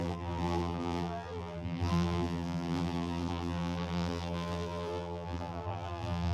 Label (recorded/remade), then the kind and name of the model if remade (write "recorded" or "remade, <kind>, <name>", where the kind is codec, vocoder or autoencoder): remade, vocoder, BigVGAN v2